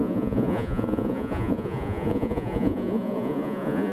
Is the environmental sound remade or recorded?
remade